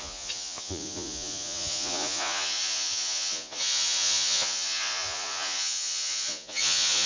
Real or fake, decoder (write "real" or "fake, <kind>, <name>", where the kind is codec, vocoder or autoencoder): fake, vocoder, Vocos